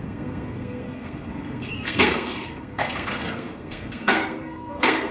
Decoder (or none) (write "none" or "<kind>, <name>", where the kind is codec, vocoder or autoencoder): codec, SNAC